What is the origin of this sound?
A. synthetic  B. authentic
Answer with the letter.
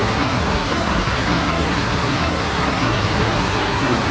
A